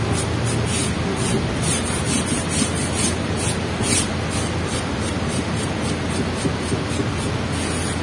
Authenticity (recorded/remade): recorded